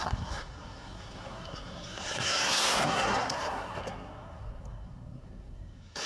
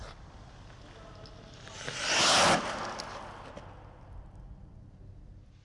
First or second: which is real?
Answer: second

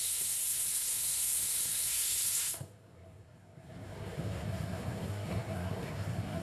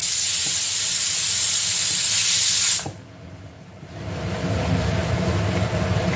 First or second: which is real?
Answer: second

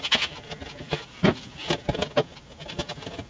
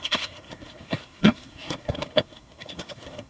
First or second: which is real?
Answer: first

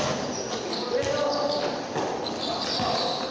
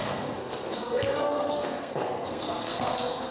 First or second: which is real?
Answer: first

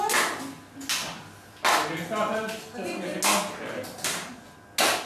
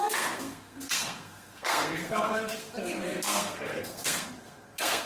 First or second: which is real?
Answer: first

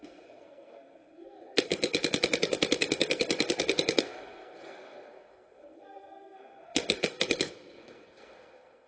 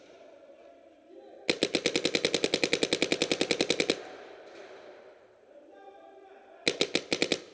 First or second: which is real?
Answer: second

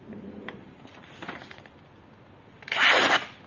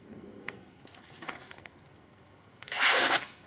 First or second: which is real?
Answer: first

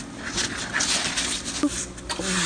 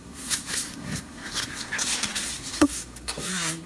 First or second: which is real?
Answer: first